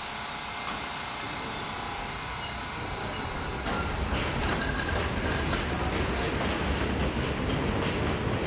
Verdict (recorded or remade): recorded